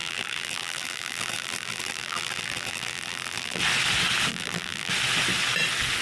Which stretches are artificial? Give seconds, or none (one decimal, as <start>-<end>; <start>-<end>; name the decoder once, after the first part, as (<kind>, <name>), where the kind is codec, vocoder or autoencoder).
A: 0.0-3.6 (vocoder, BigVGAN v2); 4.3-4.9